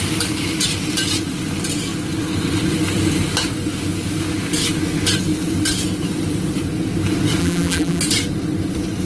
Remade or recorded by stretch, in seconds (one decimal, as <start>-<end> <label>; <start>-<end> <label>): 0.0-7.4 recorded; 7.4-8.0 remade; 8.0-9.1 recorded